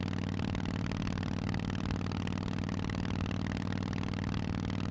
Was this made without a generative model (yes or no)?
yes